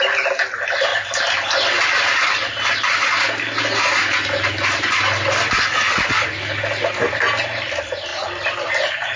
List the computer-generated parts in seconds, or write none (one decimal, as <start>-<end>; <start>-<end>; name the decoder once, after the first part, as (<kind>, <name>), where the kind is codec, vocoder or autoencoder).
none